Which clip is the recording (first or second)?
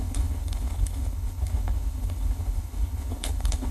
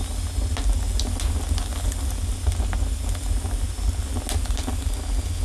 second